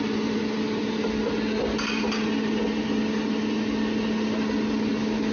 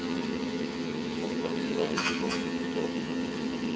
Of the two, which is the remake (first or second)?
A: second